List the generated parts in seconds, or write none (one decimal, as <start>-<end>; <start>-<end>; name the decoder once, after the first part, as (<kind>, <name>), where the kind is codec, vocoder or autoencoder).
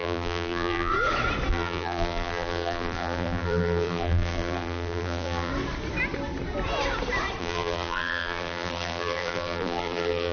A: 0.0-0.9 (vocoder, BigVGAN v2); 1.5-5.5; 7.4-10.3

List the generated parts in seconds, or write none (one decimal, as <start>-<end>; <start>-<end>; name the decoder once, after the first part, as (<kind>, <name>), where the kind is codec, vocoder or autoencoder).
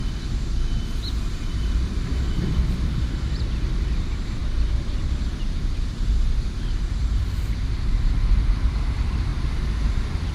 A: 1.3-4.4 (vocoder, BigVGAN v2); 5.3-9.3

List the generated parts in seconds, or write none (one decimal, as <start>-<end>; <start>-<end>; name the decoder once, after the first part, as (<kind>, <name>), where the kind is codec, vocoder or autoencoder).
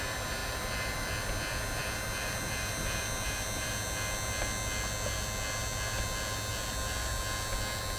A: 0.4-1.1 (vocoder, BigVGAN v2); 1.8-3.7